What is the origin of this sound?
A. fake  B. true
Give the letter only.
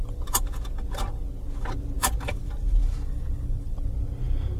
B